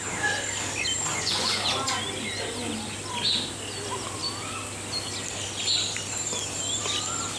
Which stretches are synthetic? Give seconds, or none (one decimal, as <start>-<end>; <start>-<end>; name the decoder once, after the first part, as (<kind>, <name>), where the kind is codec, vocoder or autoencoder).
1.1-1.7 (vocoder, Vocos)